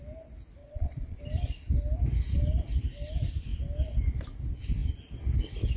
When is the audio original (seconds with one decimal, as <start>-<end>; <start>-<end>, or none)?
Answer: 0.0-0.6; 1.2-5.8